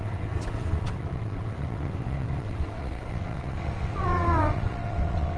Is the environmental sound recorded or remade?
remade